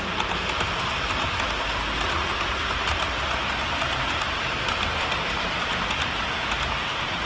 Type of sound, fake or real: real